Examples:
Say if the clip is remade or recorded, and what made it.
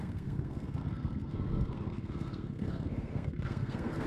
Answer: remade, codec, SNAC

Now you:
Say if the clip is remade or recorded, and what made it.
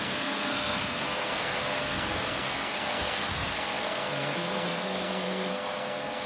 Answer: remade, codec, SNAC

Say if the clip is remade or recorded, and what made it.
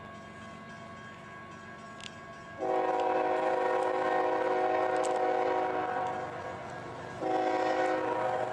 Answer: recorded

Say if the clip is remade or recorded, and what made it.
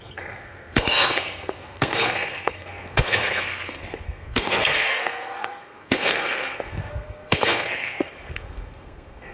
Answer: remade, codec, SNAC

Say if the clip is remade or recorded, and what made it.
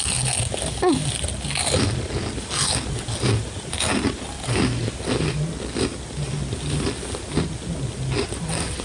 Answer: recorded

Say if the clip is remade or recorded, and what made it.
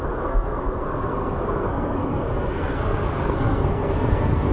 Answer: remade, codec, SNAC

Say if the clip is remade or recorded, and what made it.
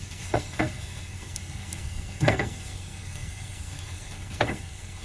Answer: remade, codec, SNAC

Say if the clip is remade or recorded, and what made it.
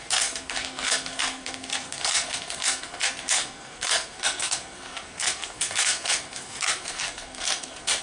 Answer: remade, codec, SNAC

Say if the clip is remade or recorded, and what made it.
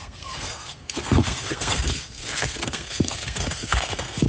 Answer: remade, codec, SNAC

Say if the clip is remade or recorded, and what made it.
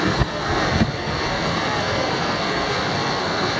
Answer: remade, codec, SNAC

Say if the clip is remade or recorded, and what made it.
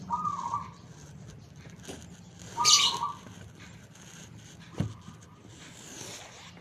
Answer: recorded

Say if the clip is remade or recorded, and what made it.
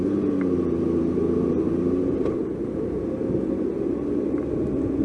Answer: recorded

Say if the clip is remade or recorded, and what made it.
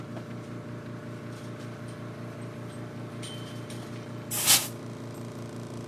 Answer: recorded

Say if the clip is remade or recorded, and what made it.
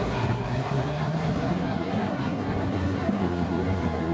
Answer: remade, codec, SNAC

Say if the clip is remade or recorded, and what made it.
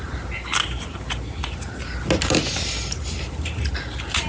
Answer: recorded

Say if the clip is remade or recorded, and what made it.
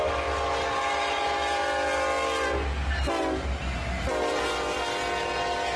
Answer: recorded